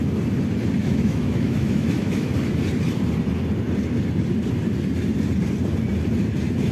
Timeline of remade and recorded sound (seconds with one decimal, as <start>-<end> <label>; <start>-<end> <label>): 0.0-0.8 recorded; 0.8-2.3 remade; 2.3-6.7 recorded

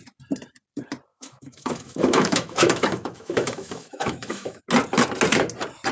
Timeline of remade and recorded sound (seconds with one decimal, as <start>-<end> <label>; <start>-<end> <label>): 0.0-1.1 recorded; 1.1-4.6 remade; 4.6-5.9 recorded

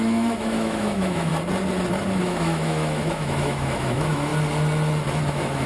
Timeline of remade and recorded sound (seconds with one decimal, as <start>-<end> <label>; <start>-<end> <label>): 0.0-1.3 remade; 1.3-2.2 recorded; 2.2-4.3 remade; 4.3-5.3 recorded; 5.3-5.7 remade

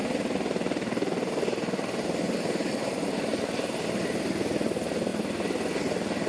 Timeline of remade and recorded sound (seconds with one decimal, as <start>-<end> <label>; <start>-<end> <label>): 0.0-6.3 recorded

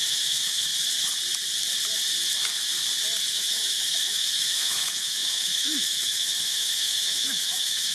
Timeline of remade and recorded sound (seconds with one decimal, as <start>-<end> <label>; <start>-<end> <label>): 0.0-0.7 remade; 0.7-3.3 recorded; 3.3-7.9 remade

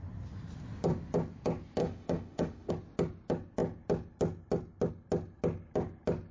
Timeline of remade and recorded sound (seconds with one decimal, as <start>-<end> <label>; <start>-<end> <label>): 0.0-1.8 recorded; 1.8-2.7 remade; 2.7-6.3 recorded